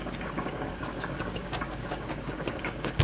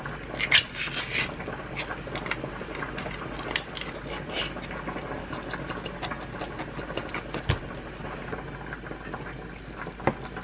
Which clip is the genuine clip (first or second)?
second